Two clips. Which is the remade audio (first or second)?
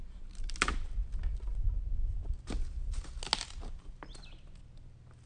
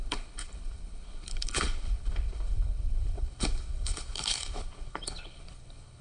second